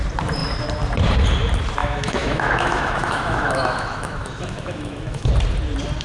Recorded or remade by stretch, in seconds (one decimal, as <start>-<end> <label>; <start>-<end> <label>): 0.0-1.8 recorded; 1.8-5.3 remade; 5.3-6.0 recorded